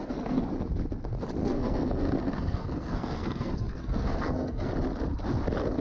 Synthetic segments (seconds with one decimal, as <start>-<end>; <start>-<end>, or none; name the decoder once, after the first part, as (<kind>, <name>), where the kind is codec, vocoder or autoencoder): 0.0-0.5 (codec, SNAC); 1.4-4.7